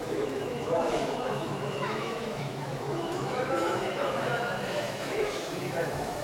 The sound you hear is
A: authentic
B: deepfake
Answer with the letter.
B